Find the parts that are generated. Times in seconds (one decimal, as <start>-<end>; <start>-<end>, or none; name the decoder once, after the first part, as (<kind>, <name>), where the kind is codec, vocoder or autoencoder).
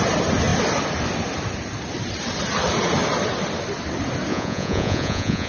4.3-5.5 (vocoder, Vocos)